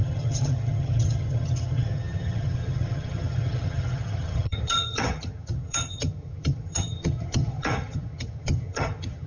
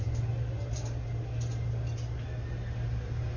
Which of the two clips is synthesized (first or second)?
first